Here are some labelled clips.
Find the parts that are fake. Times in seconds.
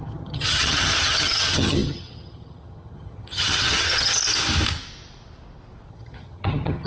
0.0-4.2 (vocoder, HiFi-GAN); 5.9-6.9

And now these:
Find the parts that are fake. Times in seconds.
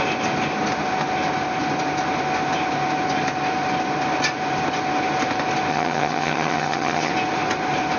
5.7-7.1 (vocoder, HiFi-GAN)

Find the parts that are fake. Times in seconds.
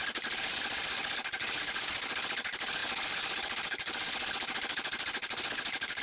none